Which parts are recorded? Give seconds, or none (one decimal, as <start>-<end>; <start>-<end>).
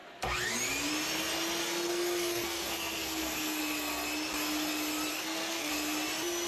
0.0-1.6; 3.6-5.1; 5.7-6.5